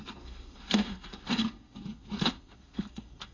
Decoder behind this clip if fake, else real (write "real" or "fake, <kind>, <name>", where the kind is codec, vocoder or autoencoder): fake, codec, SNAC